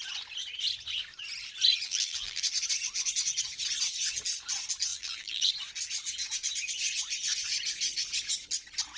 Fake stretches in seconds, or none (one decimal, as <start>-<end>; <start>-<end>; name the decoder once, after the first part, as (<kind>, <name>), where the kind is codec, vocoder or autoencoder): 1.7-2.4 (vocoder, BigVGAN v2); 4.9-5.5